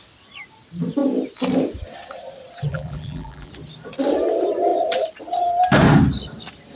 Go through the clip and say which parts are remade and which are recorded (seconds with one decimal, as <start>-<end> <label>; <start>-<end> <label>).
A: 0.0-2.7 recorded; 2.7-3.5 remade; 3.5-6.8 recorded